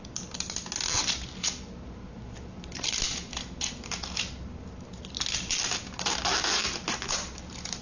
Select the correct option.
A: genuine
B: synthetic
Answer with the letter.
A